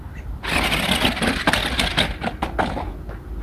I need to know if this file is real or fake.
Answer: real